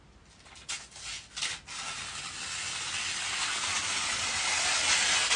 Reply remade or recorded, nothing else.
recorded